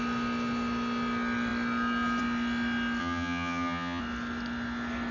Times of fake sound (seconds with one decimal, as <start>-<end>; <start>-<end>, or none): 3.0-4.0